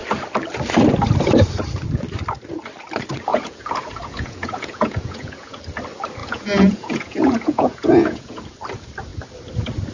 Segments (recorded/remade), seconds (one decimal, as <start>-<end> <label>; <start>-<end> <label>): 0.0-3.3 recorded; 3.3-5.6 remade; 5.6-6.2 recorded; 6.2-8.4 remade; 8.4-9.9 recorded